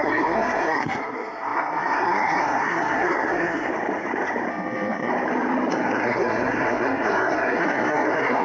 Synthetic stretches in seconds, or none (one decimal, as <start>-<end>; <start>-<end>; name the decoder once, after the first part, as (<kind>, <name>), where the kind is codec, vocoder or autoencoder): 0.0-3.7 (codec, SNAC); 4.5-5.1; 5.7-8.4